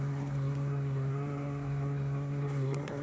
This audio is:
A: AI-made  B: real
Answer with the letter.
A